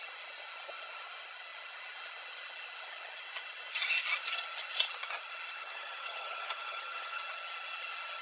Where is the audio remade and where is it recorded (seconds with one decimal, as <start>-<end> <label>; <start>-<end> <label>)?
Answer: 0.0-5.6 recorded; 5.6-7.2 remade; 7.2-8.2 recorded